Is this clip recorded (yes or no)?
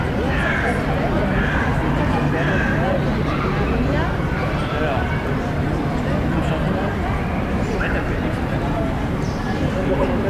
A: yes